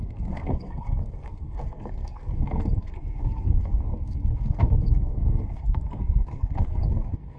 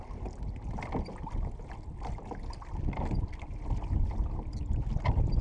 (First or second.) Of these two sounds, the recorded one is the second